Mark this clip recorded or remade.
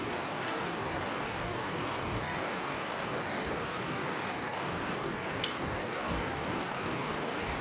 remade